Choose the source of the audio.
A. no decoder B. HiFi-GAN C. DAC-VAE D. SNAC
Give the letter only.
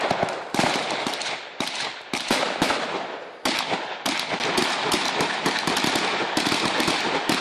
A